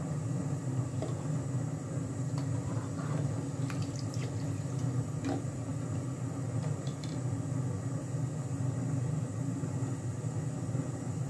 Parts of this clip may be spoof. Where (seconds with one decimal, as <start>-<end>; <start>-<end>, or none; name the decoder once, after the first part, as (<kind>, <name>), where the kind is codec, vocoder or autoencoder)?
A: 0.0-5.7 (vocoder, BigVGAN v2); 6.5-6.9